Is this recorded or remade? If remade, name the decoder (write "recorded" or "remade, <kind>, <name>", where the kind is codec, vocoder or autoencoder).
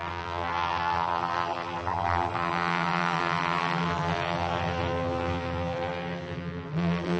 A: remade, vocoder, BigVGAN v2